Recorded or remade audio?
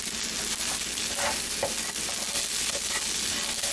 recorded